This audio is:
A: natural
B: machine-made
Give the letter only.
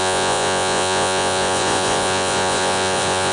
B